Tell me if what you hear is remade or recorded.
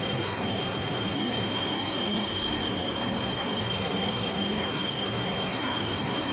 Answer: remade